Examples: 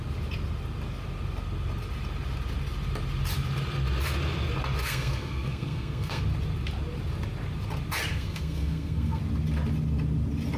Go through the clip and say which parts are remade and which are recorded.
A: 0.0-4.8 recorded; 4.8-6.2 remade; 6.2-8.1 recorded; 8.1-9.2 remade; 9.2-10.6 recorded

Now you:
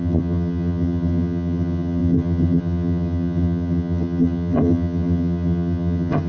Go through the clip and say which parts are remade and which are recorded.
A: 0.0-6.3 remade

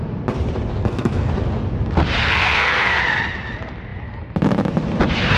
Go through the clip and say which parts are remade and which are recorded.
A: 0.0-0.8 recorded; 0.8-1.3 remade; 1.3-2.2 recorded; 2.2-3.0 remade; 3.0-5.4 recorded

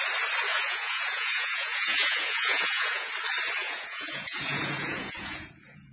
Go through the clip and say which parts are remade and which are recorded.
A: 0.0-0.5 recorded; 0.5-3.1 remade; 3.1-3.6 recorded; 3.6-5.9 remade

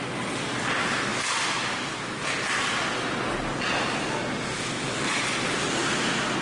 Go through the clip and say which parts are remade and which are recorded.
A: 0.0-6.4 recorded

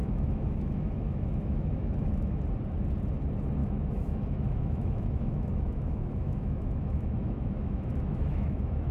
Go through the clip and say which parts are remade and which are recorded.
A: 0.0-2.4 remade; 2.4-3.6 recorded; 3.6-8.9 remade

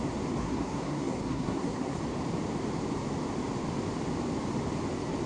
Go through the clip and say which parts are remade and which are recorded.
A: 0.0-0.4 recorded; 0.4-2.0 remade; 2.0-5.3 recorded